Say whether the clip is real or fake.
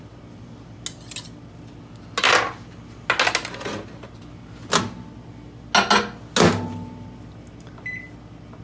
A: real